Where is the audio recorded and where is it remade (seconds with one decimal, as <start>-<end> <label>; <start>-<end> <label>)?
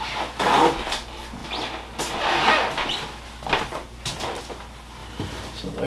0.0-1.4 recorded; 1.4-4.4 remade; 4.4-5.0 recorded; 5.0-5.9 remade